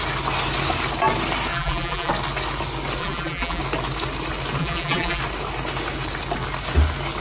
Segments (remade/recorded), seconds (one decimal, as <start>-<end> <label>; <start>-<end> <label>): 0.0-1.5 recorded; 1.5-2.1 remade; 2.1-3.0 recorded; 3.0-3.6 remade; 3.6-4.6 recorded; 4.6-5.2 remade; 5.2-7.2 recorded